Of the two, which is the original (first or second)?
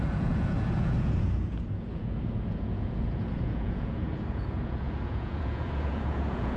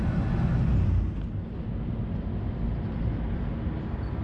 second